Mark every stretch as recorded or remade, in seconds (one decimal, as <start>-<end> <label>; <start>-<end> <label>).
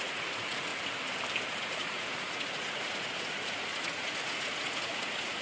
0.0-0.7 remade; 0.7-1.5 recorded; 1.5-5.4 remade